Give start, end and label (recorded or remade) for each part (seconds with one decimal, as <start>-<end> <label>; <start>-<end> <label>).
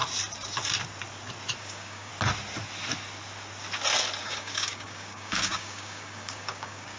0.0-1.6 recorded; 1.6-2.1 remade; 2.1-4.2 recorded; 4.2-7.0 remade